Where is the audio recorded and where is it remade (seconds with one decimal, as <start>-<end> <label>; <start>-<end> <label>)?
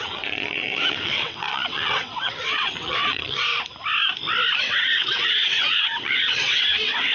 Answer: 0.0-3.5 remade; 3.5-4.6 recorded; 4.6-7.1 remade